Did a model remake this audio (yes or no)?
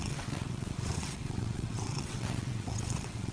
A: yes